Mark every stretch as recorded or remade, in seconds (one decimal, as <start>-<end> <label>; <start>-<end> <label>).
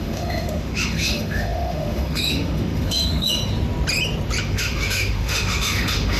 0.0-3.4 remade; 3.4-4.4 recorded; 4.4-6.2 remade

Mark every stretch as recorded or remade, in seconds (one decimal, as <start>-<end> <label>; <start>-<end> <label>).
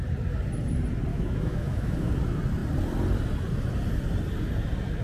0.0-1.1 recorded; 1.1-2.1 remade; 2.1-5.0 recorded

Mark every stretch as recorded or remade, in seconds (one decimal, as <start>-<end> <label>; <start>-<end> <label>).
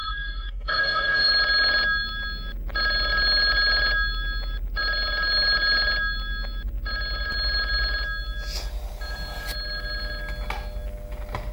0.0-1.3 remade; 1.3-11.5 recorded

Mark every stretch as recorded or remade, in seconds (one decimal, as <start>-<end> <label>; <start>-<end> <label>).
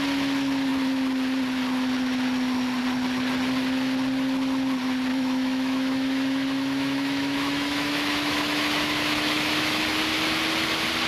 0.0-5.1 recorded; 5.1-9.8 remade; 9.8-11.1 recorded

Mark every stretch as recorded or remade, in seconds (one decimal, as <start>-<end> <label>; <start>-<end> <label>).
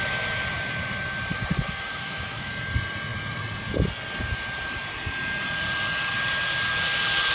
0.0-1.9 recorded; 1.9-2.5 remade; 2.5-7.3 recorded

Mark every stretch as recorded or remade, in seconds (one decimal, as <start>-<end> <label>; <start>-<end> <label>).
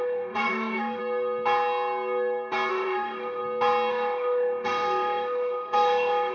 0.0-1.0 remade; 1.0-2.7 recorded; 2.7-3.4 remade; 3.4-3.9 recorded; 3.9-6.3 remade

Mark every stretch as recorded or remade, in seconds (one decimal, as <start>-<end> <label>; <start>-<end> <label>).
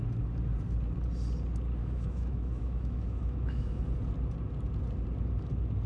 0.0-1.8 recorded; 1.8-3.8 remade; 3.8-5.9 recorded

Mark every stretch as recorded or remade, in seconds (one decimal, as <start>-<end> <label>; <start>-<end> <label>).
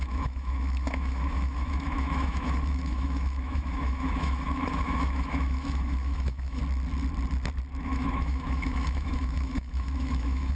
0.0-6.6 remade; 6.6-7.8 recorded; 7.8-10.6 remade